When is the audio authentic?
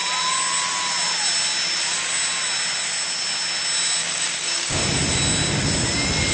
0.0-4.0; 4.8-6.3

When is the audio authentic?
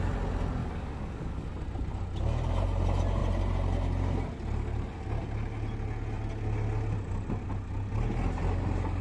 0.0-0.6; 1.5-9.0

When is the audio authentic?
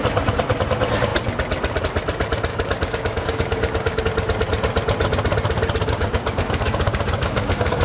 0.0-2.5; 4.0-5.8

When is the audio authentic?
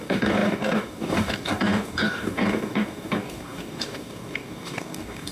none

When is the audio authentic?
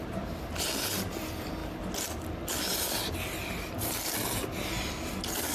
0.0-5.5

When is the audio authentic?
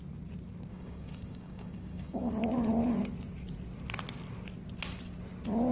0.0-0.7; 2.3-5.7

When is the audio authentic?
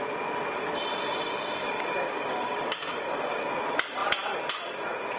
0.0-1.6; 3.4-5.2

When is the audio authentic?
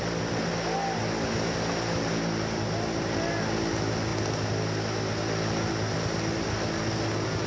0.0-7.5